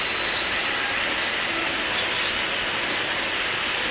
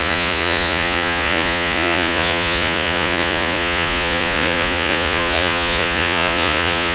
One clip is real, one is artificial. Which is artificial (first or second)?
second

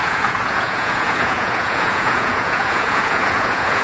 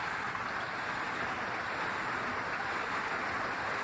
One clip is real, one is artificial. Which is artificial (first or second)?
first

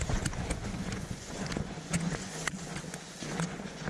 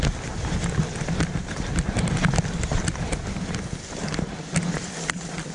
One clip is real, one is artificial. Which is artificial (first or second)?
first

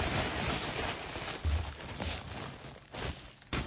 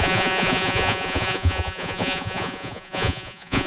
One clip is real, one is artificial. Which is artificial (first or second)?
second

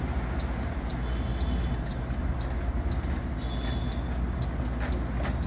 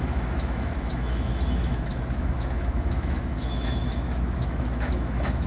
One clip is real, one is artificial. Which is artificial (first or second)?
second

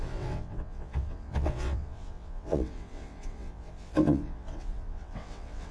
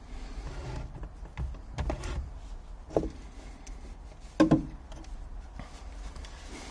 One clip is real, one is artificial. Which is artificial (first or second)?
first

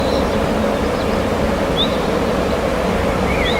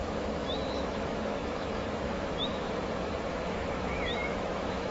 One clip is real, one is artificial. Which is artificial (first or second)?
second